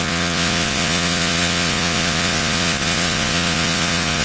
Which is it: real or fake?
fake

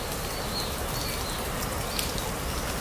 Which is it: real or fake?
real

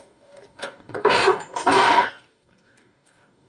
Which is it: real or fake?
fake